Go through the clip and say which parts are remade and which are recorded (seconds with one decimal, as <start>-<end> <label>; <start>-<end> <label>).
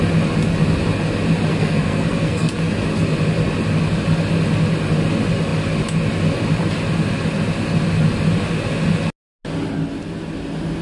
0.0-1.5 recorded; 1.5-2.5 remade; 2.5-10.8 recorded